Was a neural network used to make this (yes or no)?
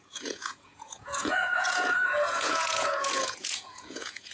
yes